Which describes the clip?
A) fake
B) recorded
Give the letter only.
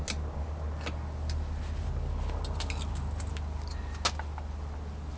B